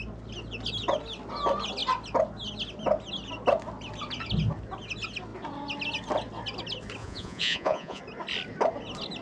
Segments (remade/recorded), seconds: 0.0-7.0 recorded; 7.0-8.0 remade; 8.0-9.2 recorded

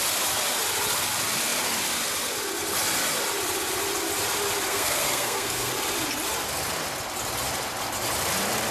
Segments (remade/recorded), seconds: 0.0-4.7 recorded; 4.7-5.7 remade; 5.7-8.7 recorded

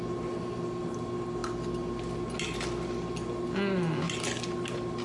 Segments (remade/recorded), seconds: 0.0-5.0 recorded